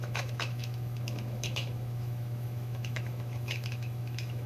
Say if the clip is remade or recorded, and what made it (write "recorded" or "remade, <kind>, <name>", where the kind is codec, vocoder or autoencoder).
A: remade, autoencoder, DAC-VAE